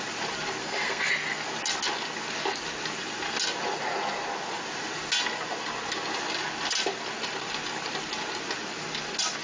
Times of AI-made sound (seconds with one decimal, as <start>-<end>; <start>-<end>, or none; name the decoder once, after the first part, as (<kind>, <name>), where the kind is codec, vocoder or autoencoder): 0.6-1.1 (codec, SNAC)

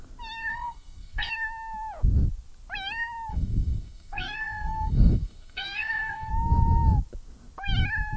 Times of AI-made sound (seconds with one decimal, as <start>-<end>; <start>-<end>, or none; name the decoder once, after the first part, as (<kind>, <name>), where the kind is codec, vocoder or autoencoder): 0.5-1.3 (codec, SNAC); 3.3-6.3

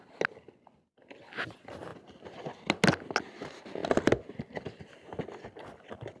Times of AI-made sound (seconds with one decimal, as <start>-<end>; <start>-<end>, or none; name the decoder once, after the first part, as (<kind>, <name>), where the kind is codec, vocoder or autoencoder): none

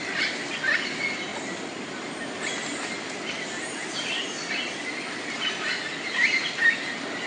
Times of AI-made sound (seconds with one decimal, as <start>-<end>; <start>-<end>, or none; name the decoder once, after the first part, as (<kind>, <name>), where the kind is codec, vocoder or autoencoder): none

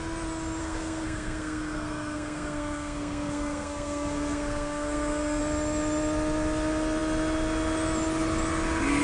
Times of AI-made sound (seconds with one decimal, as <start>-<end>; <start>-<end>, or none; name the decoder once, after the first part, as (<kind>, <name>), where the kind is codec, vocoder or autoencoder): 0.6-5.4 (codec, SNAC)